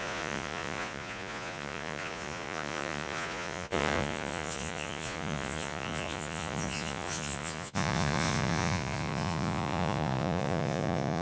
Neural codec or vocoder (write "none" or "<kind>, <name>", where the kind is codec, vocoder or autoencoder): vocoder, Vocos